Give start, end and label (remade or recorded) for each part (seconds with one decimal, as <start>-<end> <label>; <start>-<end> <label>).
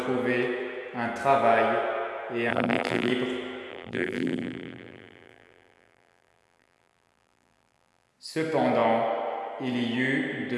0.0-2.5 recorded; 2.5-3.1 remade; 3.1-3.7 recorded; 3.7-8.1 remade; 8.1-10.6 recorded